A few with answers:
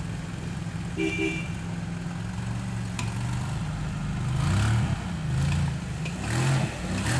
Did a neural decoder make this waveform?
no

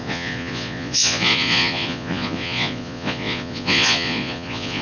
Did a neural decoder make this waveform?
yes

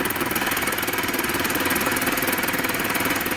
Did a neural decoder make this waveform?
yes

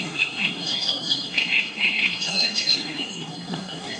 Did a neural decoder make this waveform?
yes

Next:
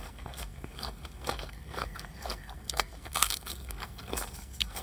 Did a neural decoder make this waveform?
yes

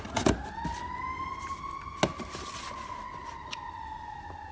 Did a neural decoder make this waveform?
no